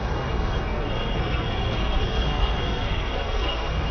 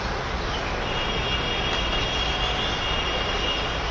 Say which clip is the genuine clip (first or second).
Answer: second